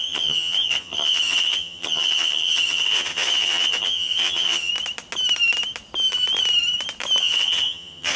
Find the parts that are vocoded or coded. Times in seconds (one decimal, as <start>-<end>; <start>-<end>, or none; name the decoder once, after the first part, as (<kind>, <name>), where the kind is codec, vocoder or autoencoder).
0.0-4.7 (vocoder, HiFi-GAN); 7.2-8.2